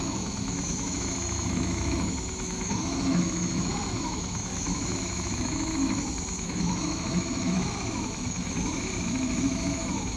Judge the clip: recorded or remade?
remade